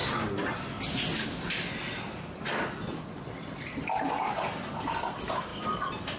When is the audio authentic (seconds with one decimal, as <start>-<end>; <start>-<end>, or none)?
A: 0.0-6.2